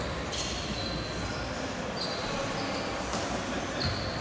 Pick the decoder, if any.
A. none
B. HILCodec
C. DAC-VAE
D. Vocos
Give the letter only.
A